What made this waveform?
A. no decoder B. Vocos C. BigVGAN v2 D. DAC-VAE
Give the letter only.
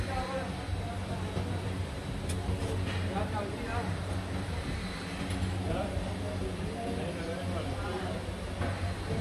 A